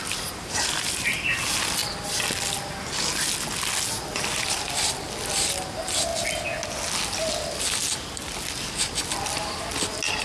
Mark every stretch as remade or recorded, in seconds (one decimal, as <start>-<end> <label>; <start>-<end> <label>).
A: 0.0-10.2 recorded